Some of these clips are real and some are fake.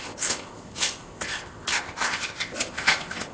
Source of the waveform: fake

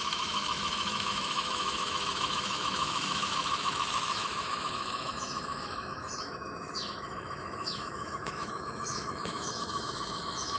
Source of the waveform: fake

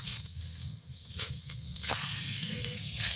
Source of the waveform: fake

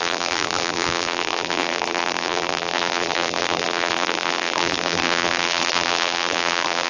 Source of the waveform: fake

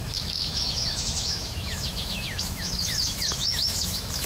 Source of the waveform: fake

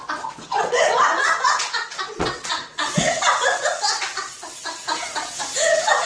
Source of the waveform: fake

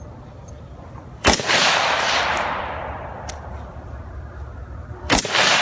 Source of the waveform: fake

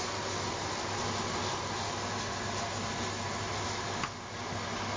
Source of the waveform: real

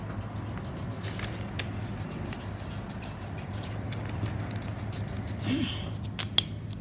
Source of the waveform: real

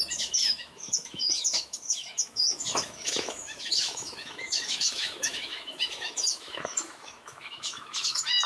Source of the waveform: fake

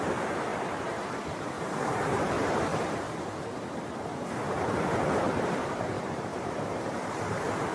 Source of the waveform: fake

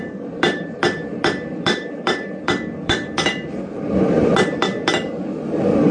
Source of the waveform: fake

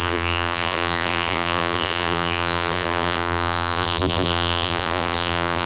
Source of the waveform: fake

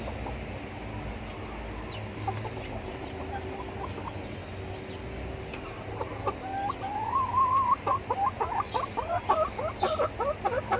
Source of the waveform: real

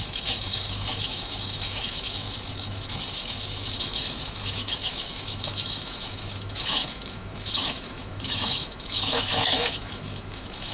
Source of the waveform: fake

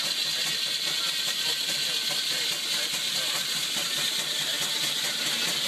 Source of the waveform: real